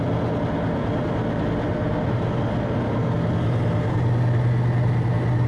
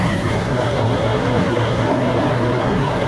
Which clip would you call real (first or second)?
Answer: first